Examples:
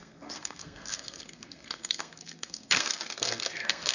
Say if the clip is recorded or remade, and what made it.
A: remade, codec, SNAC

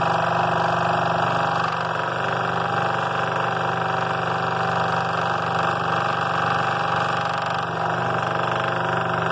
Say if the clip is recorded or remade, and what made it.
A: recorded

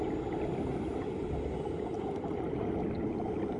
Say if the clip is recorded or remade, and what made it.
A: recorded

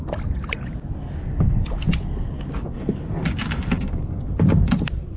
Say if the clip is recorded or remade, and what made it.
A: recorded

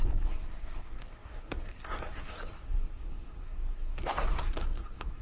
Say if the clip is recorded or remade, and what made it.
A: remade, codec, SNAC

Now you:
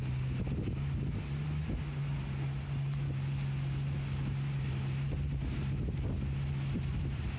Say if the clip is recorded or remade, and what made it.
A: recorded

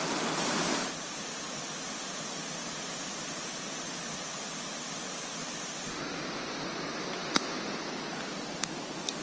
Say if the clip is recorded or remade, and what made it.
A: recorded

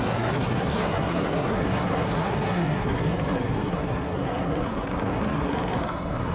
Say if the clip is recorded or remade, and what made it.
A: remade, codec, SNAC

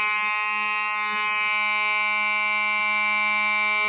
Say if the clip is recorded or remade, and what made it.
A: recorded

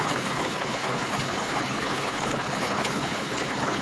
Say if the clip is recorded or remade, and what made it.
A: remade, codec, HILCodec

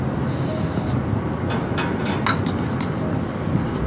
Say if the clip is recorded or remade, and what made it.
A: recorded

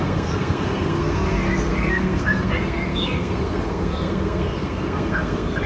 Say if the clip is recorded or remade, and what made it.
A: remade, codec, SNAC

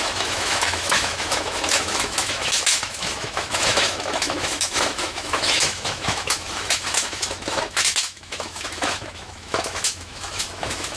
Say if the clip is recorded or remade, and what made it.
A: remade, autoencoder, DAC-VAE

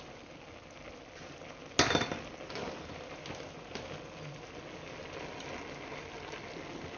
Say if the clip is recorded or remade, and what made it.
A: recorded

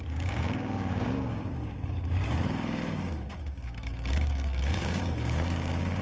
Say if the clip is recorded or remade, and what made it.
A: remade, codec, DAC